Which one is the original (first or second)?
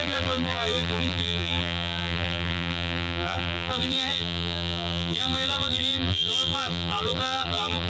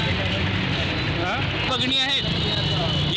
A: second